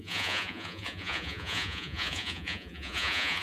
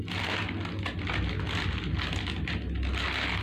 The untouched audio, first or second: second